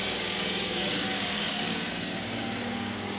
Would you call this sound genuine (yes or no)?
no